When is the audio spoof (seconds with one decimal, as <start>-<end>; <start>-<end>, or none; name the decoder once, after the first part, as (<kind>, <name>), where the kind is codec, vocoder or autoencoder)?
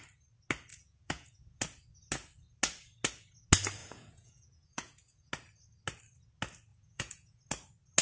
0.7-1.6 (vocoder, Vocos); 3.8-5.3; 6.7-7.4